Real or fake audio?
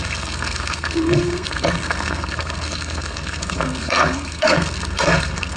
fake